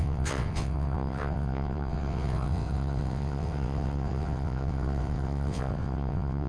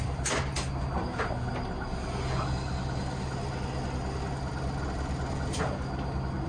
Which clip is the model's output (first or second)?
first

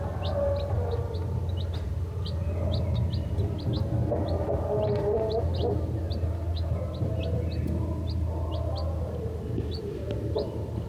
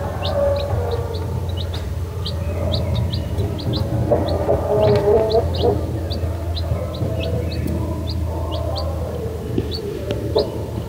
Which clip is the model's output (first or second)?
first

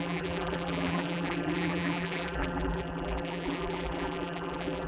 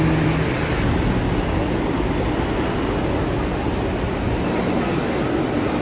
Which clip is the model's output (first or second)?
first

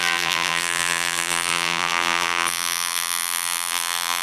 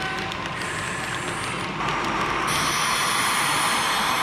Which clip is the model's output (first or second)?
first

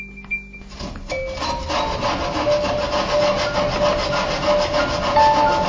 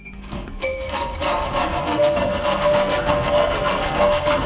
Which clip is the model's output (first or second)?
second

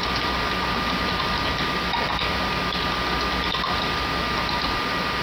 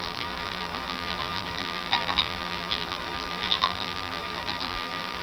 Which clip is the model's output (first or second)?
second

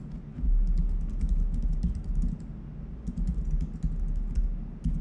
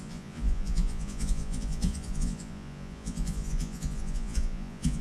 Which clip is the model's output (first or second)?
second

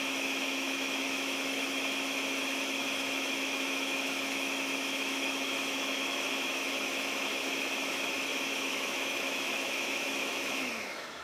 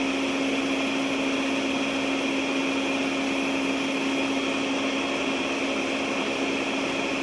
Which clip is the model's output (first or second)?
first